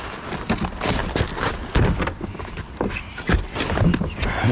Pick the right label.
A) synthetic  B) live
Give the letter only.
B